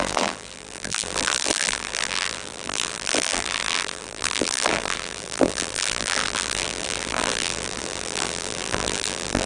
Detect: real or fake fake